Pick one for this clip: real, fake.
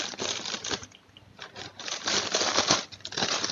real